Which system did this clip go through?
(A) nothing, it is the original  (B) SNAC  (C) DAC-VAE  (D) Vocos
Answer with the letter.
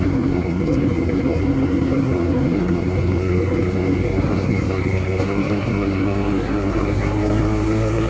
B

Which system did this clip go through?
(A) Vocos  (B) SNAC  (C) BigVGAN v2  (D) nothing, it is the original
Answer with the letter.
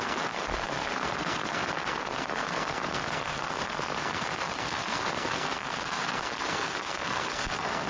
B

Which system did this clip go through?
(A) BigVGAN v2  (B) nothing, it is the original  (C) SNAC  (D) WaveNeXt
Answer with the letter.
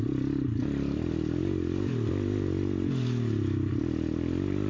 B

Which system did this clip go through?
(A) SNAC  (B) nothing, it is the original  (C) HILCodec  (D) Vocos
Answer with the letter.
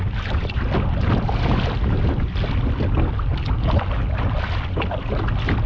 B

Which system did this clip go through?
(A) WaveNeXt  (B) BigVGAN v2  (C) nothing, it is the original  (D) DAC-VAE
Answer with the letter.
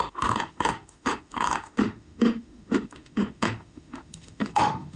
D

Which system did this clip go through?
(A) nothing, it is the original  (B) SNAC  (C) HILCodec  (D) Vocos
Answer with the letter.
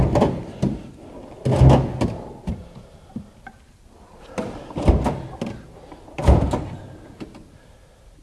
A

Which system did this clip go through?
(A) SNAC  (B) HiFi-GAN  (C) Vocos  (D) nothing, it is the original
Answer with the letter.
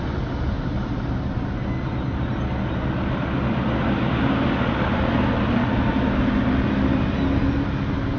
D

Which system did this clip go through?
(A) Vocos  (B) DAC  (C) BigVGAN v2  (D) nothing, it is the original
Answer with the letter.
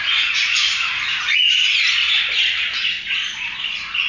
D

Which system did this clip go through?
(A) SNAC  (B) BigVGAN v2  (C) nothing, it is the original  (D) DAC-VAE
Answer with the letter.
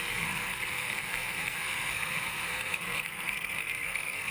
A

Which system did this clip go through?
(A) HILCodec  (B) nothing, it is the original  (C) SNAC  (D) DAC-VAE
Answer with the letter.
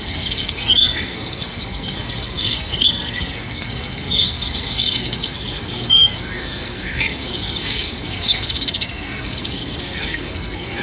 C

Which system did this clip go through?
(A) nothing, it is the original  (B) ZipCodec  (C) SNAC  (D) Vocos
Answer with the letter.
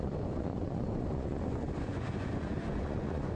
D